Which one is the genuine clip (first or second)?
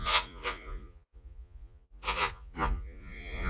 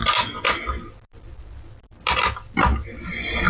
second